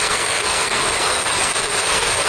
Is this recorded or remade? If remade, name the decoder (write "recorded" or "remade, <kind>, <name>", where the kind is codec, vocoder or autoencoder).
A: remade, codec, SNAC